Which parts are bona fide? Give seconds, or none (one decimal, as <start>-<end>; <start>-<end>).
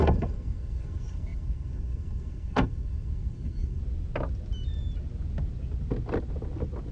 3.8-6.9